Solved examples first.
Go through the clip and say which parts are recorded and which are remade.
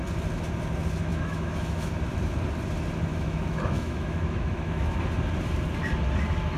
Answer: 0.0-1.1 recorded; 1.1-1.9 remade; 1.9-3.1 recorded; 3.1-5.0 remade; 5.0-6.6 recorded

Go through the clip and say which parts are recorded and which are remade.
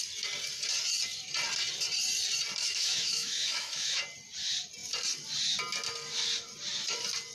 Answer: 0.0-2.6 recorded; 2.6-4.0 remade; 4.0-7.3 recorded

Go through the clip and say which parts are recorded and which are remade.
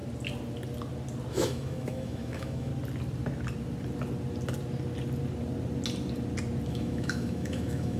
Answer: 0.0-1.3 recorded; 1.3-2.7 remade; 2.7-6.7 recorded; 6.7-8.0 remade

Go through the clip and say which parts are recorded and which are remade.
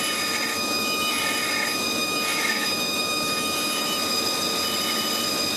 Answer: 0.0-0.5 recorded; 0.5-1.2 remade; 1.2-2.0 recorded; 2.0-4.0 remade; 4.0-5.6 recorded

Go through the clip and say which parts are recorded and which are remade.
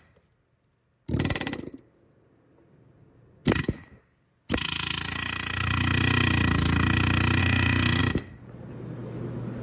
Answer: 0.0-7.4 recorded; 7.4-8.0 remade; 8.0-9.6 recorded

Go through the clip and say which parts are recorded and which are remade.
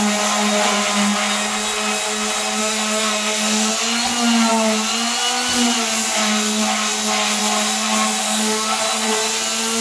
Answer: 0.0-2.6 recorded; 2.6-3.7 remade; 3.7-8.2 recorded; 8.2-8.8 remade; 8.8-9.8 recorded